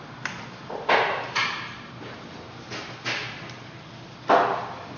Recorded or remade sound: recorded